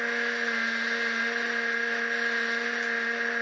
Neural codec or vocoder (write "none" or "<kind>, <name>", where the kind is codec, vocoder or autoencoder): none